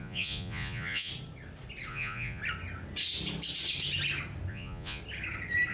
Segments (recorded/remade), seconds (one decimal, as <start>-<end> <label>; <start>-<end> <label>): 0.0-1.1 remade; 1.1-1.9 recorded; 1.9-2.4 remade; 2.4-4.5 recorded; 4.5-5.0 remade; 5.0-5.7 recorded